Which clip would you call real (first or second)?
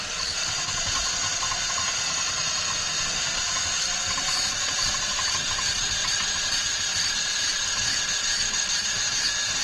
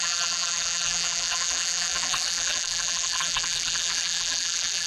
first